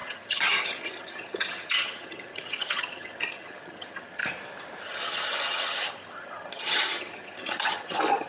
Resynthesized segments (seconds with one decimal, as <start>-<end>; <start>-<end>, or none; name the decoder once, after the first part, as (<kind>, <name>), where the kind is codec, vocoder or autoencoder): 0.0-4.2 (vocoder, HiFi-GAN); 4.8-8.3